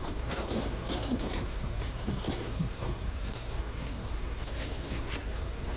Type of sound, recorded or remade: remade